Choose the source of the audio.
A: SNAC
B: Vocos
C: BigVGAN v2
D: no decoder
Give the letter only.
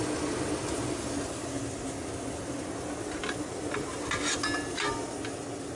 D